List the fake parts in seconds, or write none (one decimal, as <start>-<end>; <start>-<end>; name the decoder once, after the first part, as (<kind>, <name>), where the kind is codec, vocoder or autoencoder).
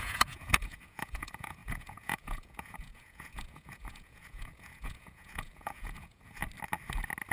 0.0-6.4 (vocoder, Vocos)